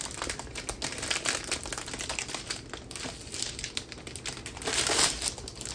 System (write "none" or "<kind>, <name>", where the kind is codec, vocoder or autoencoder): none